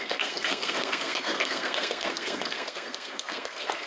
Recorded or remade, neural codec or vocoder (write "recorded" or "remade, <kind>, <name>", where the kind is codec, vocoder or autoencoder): remade, codec, SNAC